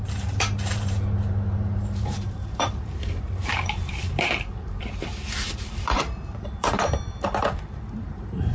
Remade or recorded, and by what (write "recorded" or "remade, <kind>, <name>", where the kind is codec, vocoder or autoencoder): remade, vocoder, BigVGAN v2